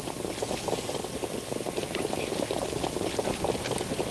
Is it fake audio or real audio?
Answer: real